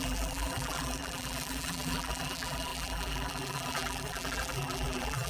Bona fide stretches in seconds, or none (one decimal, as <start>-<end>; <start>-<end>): none